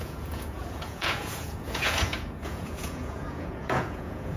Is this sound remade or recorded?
remade